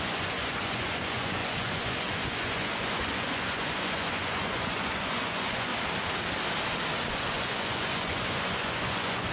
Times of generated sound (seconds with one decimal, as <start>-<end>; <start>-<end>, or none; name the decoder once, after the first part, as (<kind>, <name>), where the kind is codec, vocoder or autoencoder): 0.0-5.7 (vocoder, Vocos); 7.1-9.3

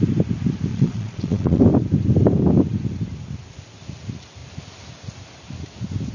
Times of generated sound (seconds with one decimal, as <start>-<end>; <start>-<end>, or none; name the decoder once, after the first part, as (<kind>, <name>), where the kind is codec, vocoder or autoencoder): 0.7-1.6 (vocoder, Vocos)

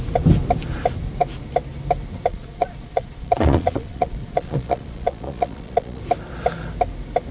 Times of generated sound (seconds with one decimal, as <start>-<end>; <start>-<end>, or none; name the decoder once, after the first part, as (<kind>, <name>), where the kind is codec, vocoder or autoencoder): 2.3-6.0 (vocoder, Vocos)

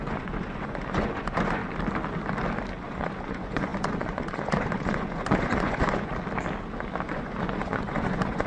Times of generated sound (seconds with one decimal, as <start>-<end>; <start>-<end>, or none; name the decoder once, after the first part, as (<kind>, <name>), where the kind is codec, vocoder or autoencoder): 0.0-1.6 (vocoder, Vocos); 2.8-6.1; 7.1-8.5

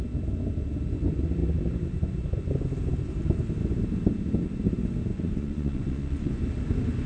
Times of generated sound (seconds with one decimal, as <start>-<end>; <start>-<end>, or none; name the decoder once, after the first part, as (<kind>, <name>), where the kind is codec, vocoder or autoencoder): 5.1-6.4 (vocoder, Vocos)

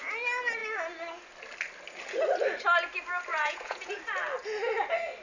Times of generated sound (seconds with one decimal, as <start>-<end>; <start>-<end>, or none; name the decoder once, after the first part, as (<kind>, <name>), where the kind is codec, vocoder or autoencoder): 3.3-4.0 (vocoder, Vocos)

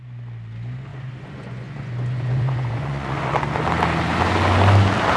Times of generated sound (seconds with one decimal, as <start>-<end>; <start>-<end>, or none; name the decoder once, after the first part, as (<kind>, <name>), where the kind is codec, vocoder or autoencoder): 0.9-3.4 (vocoder, Vocos)

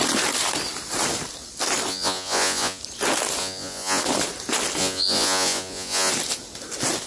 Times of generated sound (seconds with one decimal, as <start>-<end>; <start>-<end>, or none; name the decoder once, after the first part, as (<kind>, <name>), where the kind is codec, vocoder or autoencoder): 1.9-2.8 (vocoder, Vocos); 3.4-4.0; 4.8-6.1